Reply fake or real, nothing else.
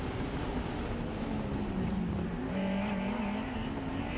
real